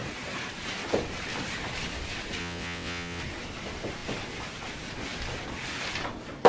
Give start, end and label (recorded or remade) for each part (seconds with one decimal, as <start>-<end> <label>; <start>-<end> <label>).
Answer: 0.0-2.4 recorded; 2.4-3.2 remade; 3.2-6.5 recorded